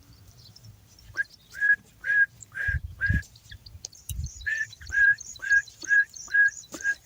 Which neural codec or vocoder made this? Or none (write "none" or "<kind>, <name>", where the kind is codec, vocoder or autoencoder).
vocoder, BigVGAN v2